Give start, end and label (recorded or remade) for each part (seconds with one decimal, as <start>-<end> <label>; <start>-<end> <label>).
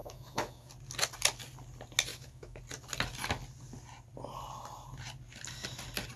0.0-0.7 remade; 0.7-2.1 recorded; 2.1-2.6 remade; 2.6-6.2 recorded